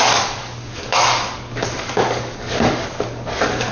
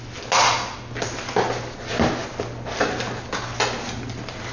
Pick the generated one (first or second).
first